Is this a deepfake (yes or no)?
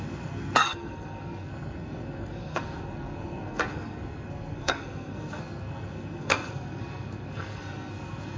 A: yes